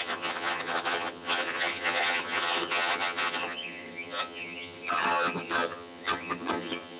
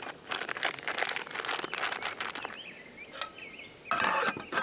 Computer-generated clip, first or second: first